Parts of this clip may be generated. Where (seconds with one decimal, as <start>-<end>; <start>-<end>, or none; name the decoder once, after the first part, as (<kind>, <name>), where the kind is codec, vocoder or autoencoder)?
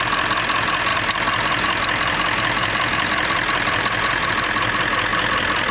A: 0.9-4.3 (vocoder, BigVGAN v2); 5.1-5.7